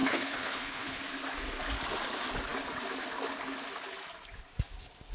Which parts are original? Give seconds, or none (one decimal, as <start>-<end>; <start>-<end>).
1.0-5.1